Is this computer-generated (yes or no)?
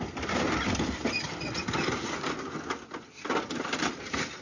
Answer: no